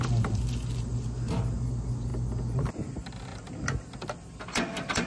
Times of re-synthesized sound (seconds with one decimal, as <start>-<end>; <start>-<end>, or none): none